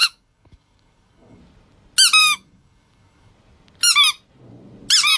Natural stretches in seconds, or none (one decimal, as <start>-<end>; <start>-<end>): 1.4-2.2; 3.3-5.2